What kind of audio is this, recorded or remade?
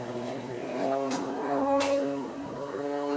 remade